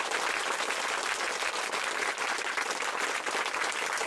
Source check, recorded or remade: recorded